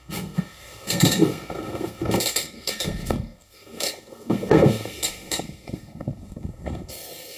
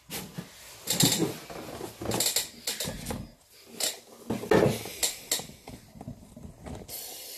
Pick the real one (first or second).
second